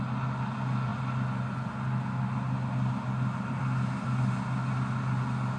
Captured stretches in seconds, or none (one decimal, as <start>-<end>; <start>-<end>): 0.0-5.6